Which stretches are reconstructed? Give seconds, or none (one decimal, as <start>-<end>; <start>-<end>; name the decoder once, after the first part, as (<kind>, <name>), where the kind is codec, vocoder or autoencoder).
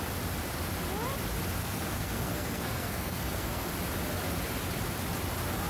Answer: 1.6-3.7 (codec, SNAC)